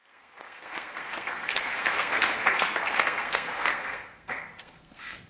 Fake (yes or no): yes